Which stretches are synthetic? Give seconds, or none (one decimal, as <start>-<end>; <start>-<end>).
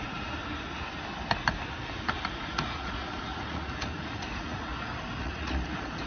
0.0-0.4; 2.3-4.7; 5.2-6.1